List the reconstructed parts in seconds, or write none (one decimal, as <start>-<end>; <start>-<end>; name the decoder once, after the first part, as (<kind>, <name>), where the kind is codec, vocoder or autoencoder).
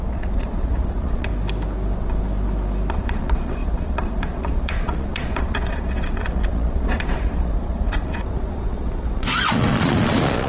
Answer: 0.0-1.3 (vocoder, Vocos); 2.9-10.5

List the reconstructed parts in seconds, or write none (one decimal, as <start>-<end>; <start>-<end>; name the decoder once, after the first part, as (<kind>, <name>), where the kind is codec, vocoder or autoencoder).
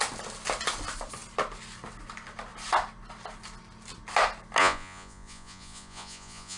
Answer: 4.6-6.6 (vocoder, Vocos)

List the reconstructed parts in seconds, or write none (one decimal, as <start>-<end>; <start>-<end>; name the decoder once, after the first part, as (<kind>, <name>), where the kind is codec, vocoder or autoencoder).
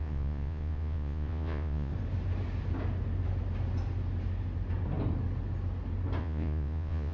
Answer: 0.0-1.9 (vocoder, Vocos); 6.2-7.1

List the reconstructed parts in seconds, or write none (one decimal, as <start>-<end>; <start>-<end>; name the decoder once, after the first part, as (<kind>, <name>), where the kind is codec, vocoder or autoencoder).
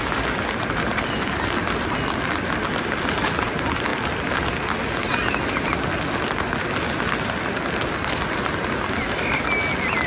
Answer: none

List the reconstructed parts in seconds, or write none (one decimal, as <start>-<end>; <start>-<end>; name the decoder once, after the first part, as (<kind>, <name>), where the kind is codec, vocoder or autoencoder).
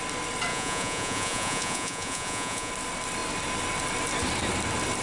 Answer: 0.5-2.7 (vocoder, Vocos)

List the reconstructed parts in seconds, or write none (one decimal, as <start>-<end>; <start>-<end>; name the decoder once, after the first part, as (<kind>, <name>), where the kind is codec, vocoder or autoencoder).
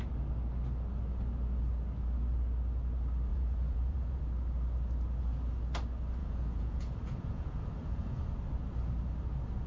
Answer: 3.3-4.2 (vocoder, Vocos); 6.2-8.2